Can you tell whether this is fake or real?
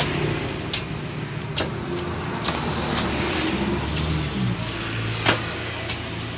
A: real